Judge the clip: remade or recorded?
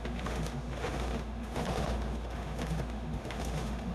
remade